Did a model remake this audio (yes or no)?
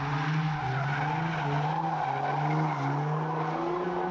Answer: no